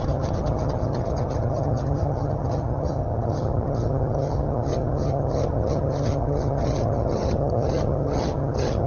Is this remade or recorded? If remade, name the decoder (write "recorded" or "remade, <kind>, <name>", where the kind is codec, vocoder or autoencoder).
remade, vocoder, HiFi-GAN